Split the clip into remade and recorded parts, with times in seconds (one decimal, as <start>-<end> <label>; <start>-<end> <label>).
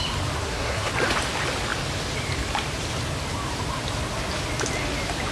0.0-0.4 recorded; 0.4-0.9 remade; 0.9-5.3 recorded